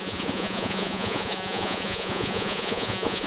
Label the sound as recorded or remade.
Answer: remade